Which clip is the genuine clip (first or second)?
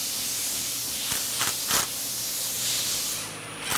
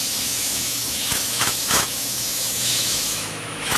first